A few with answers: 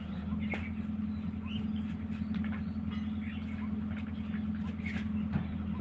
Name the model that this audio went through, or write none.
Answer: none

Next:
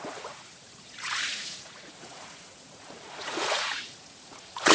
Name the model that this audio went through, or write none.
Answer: vocoder, Vocos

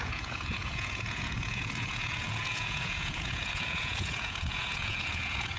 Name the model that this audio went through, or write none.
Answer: vocoder, Vocos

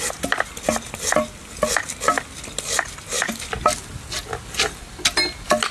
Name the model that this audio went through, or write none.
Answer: none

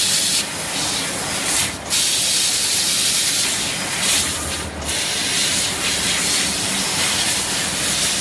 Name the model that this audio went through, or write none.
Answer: none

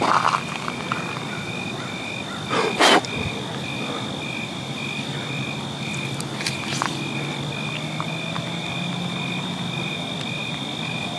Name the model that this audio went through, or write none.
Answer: none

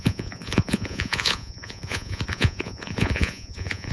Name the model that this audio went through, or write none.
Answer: vocoder, Vocos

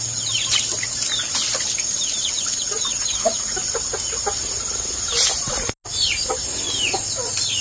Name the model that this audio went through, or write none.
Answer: none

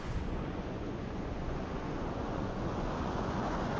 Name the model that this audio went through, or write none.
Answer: vocoder, Vocos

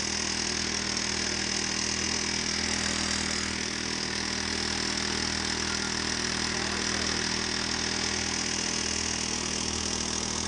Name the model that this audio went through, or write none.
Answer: none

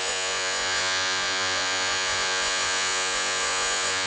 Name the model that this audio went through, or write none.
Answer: vocoder, Vocos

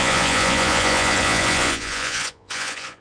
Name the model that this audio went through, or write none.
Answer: vocoder, Vocos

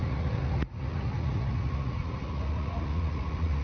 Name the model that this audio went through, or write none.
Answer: vocoder, Vocos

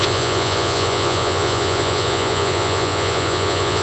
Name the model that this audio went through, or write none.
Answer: vocoder, Vocos